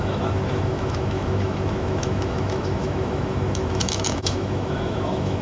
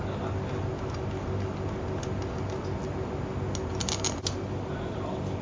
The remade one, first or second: first